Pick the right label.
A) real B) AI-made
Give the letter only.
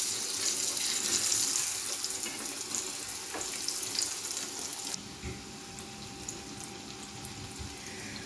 A